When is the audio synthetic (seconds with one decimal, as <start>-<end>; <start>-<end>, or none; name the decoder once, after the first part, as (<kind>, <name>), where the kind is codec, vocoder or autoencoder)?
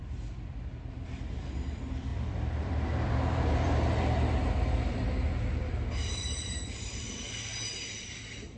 0.0-7.5 (vocoder, BigVGAN v2)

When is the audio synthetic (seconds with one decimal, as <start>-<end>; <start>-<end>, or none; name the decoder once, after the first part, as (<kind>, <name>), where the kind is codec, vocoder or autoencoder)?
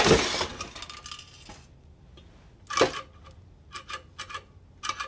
none